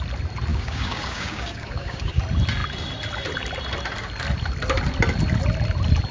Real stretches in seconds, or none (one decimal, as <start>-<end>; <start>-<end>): 0.0-0.5; 2.2-6.1